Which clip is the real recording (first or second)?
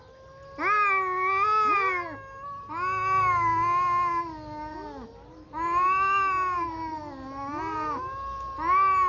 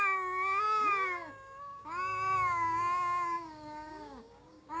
first